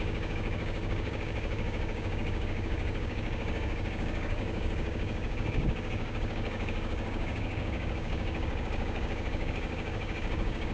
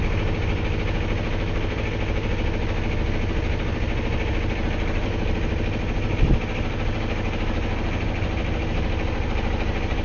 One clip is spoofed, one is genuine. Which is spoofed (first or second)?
first